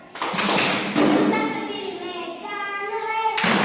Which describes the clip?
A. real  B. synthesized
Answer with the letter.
A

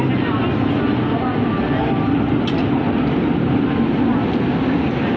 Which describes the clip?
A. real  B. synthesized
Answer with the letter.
A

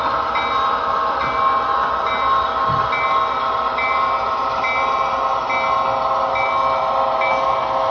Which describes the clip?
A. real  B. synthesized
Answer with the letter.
A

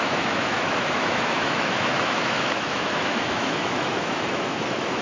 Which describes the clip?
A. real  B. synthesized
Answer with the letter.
B